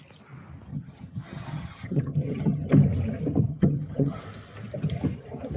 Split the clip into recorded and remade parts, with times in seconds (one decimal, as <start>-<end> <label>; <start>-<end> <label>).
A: 0.0-0.7 recorded; 0.7-2.7 remade; 2.7-3.5 recorded; 3.5-4.2 remade; 4.2-5.6 recorded